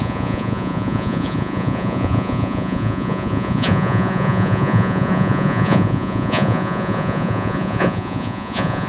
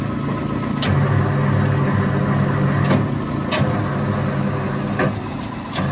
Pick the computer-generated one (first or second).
first